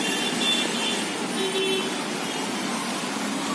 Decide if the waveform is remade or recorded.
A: recorded